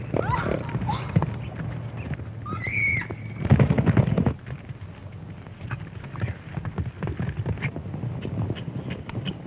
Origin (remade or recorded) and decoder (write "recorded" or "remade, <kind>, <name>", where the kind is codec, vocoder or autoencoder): recorded